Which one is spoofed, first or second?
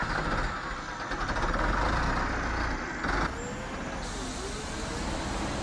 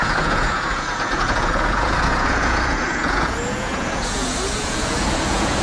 second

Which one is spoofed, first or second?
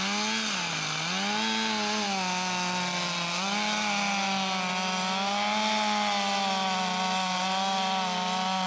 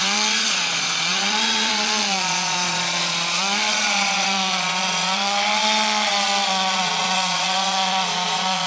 second